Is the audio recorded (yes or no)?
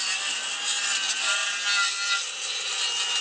yes